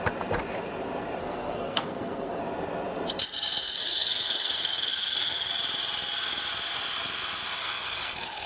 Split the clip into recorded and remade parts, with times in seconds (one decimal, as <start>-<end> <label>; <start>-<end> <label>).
0.0-1.2 recorded; 1.2-2.4 remade; 2.4-3.6 recorded; 3.6-5.5 remade; 5.5-7.6 recorded; 7.6-8.5 remade